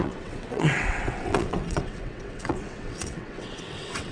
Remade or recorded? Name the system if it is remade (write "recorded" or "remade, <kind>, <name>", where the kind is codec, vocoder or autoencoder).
remade, vocoder, WaveNeXt